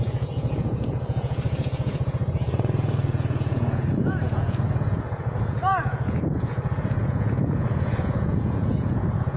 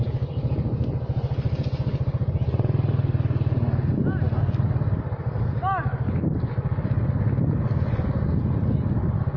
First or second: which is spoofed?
first